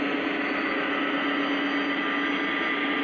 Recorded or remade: recorded